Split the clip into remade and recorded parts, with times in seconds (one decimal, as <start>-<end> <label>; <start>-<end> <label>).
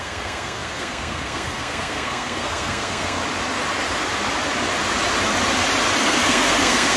0.0-3.2 remade; 3.2-6.0 recorded; 6.0-7.0 remade